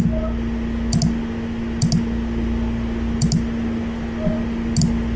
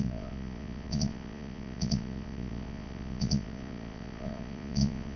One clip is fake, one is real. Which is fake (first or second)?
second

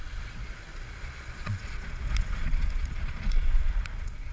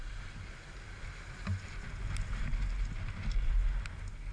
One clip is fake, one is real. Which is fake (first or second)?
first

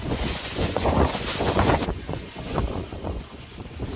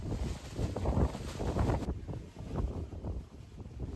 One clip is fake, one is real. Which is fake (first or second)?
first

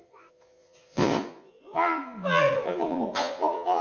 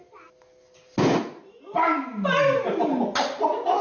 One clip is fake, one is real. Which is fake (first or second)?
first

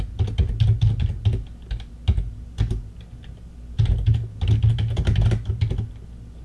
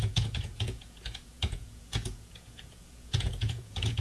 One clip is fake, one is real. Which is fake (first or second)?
second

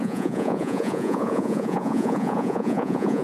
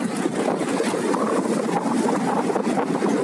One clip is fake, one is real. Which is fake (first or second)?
first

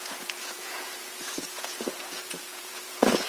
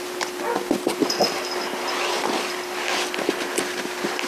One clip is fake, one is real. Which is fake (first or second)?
first